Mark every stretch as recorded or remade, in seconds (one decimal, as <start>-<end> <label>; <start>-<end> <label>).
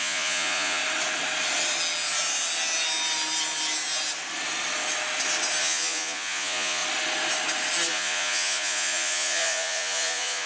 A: 0.0-0.8 remade; 0.8-5.6 recorded; 5.6-6.8 remade; 6.8-7.9 recorded; 7.9-10.5 remade